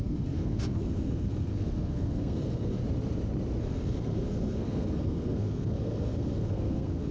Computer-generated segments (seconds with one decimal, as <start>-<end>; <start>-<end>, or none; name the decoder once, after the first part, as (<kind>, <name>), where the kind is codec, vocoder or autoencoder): 0.0-2.8 (codec, SNAC); 3.6-7.1